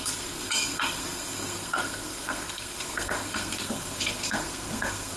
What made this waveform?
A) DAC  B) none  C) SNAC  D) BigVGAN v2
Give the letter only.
C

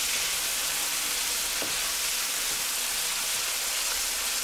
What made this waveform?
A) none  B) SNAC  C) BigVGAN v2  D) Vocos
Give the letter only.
A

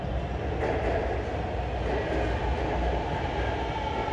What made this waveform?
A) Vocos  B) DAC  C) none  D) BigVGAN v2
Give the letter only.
C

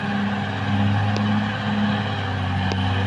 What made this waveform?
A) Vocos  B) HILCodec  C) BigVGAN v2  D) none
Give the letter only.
D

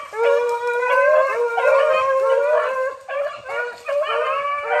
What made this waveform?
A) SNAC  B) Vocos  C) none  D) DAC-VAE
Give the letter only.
C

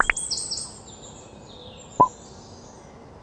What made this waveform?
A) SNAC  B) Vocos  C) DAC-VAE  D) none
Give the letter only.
D